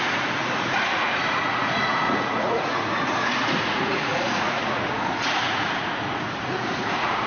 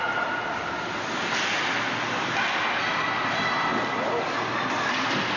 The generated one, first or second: first